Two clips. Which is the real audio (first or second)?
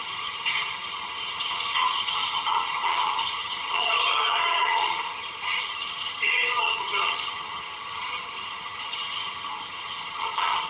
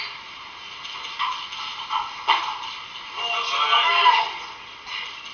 second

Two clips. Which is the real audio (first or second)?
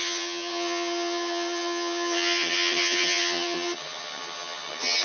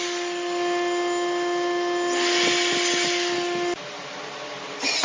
second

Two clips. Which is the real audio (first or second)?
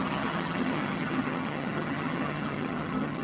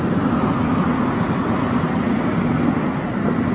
second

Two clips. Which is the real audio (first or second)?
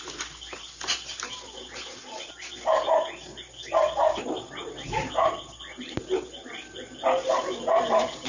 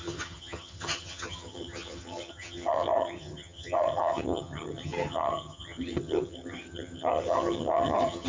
first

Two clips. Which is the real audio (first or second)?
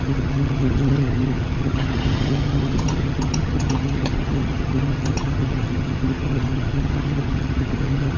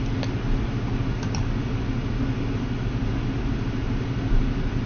second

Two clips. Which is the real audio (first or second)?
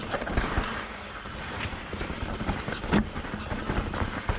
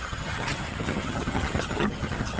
first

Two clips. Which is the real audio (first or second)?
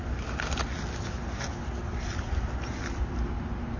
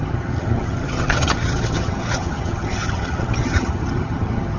first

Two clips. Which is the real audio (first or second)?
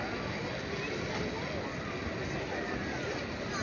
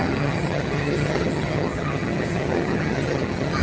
first